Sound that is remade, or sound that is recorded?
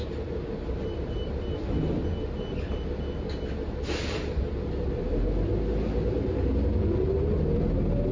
recorded